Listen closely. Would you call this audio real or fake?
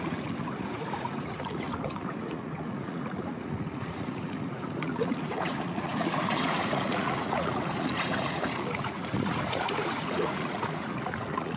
fake